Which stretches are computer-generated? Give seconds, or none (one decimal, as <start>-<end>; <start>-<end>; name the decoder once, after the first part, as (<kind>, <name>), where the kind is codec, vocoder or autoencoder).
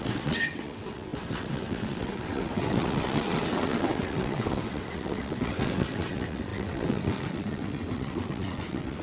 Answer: 0.0-9.0 (vocoder, WaveNeXt)